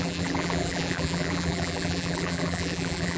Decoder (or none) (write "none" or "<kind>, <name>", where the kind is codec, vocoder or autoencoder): vocoder, BigVGAN v2